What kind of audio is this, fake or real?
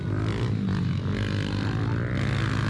real